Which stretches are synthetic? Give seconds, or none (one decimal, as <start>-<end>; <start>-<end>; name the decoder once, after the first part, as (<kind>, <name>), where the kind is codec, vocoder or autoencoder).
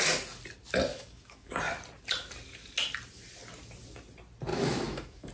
0.9-1.5 (autoencoder, DAC-VAE); 4.5-5.3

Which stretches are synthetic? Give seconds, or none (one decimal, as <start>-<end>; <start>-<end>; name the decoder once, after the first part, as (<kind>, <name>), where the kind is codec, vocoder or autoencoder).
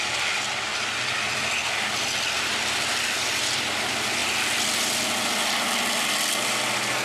0.0-0.7 (vocoder, BigVGAN v2); 2.7-4.2; 6.0-7.0